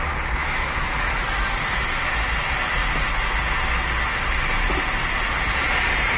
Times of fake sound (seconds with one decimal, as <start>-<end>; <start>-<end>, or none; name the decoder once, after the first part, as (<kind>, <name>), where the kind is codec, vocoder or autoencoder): 0.4-1.1 (autoencoder, DAC-VAE)